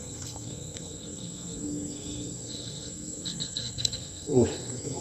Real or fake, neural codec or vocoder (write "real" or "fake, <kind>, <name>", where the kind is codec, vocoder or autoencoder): fake, codec, SNAC